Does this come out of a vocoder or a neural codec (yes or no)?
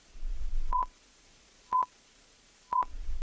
yes